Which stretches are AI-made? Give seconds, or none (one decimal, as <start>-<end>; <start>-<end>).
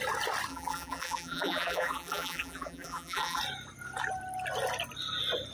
0.5-3.4